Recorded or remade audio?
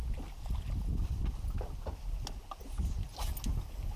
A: recorded